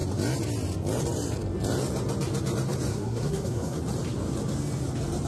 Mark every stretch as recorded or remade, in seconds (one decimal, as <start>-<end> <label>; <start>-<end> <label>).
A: 0.0-2.9 recorded; 2.9-3.8 remade; 3.8-5.3 recorded